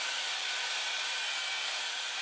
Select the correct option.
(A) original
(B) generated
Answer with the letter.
A